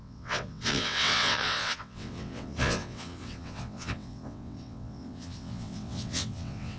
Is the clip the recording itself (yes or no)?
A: no